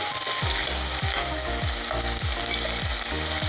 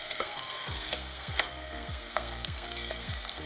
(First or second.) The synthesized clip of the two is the second